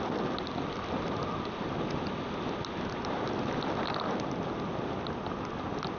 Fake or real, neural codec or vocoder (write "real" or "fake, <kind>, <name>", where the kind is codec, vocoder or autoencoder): real